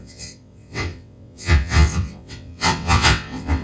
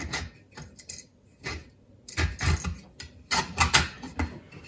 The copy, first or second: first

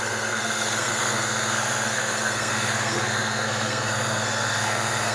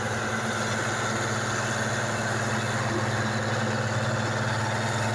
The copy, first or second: first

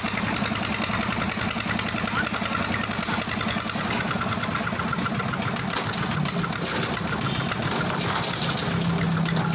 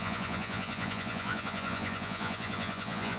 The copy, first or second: second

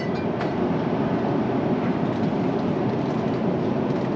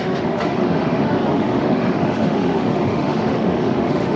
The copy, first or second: second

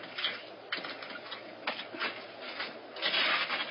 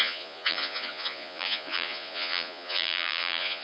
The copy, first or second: second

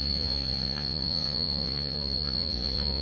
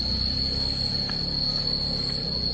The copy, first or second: first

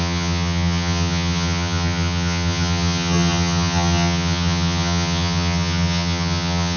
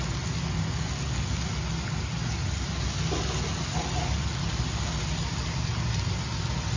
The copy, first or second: first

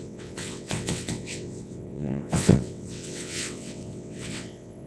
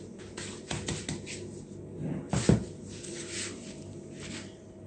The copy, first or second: first